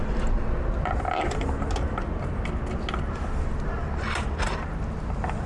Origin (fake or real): real